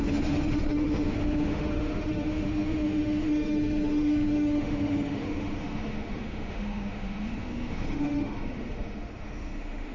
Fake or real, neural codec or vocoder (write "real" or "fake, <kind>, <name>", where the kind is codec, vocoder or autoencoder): fake, autoencoder, DAC-VAE